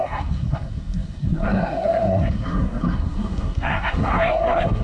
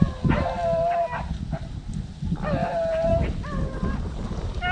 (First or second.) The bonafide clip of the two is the second